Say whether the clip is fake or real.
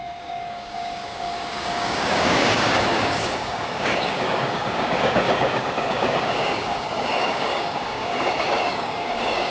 fake